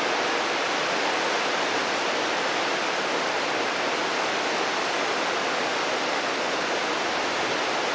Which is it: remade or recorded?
recorded